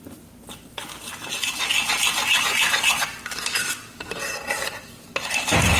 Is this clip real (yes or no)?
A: yes